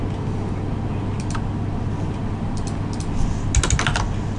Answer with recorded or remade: recorded